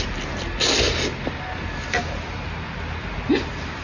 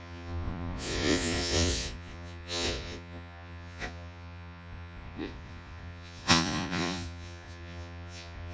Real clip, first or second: first